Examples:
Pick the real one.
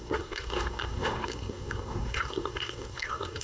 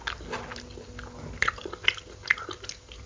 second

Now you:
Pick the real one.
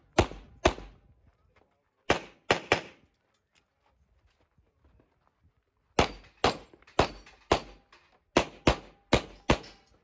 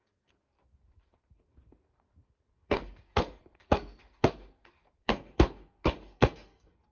first